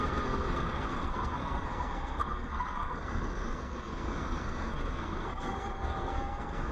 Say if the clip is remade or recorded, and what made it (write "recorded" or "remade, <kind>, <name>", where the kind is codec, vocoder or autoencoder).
remade, codec, SNAC